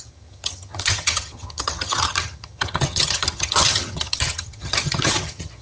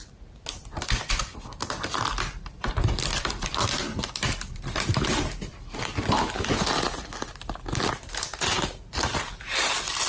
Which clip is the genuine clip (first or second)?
second